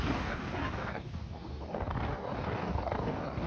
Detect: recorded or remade remade